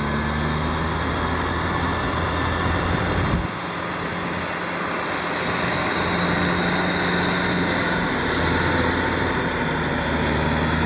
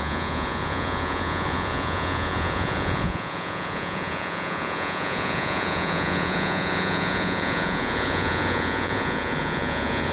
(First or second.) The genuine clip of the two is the first